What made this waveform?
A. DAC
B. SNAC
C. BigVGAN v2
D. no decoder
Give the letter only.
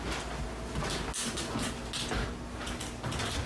D